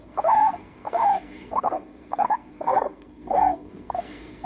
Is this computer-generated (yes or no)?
yes